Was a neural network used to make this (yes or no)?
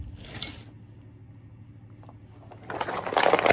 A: no